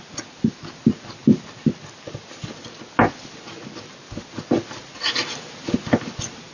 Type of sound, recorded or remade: recorded